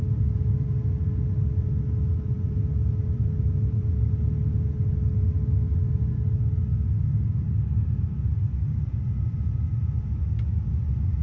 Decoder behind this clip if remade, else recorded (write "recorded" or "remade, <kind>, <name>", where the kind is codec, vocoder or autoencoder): recorded